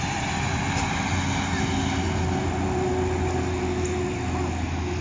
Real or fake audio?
real